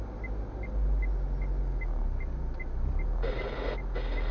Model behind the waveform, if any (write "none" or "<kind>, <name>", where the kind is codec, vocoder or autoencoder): none